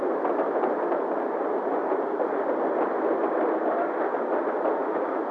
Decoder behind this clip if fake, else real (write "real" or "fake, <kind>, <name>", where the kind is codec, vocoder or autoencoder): real